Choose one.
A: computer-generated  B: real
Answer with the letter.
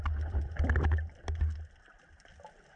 B